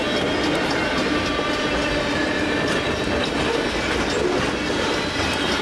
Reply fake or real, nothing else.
real